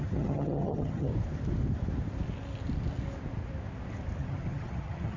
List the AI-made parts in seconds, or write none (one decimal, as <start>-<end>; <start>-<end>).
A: 0.0-1.1; 4.2-5.2